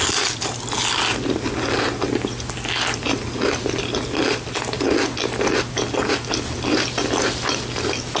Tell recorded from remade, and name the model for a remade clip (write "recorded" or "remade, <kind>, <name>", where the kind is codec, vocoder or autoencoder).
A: recorded